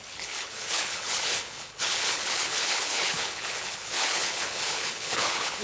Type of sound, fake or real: fake